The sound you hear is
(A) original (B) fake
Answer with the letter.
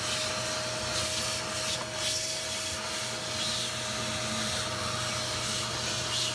A